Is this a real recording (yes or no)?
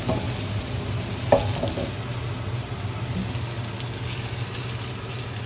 yes